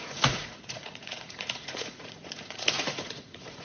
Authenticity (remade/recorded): remade